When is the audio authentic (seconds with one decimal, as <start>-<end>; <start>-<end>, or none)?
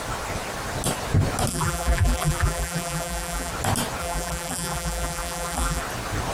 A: 0.0-1.5; 3.5-4.0; 5.8-6.3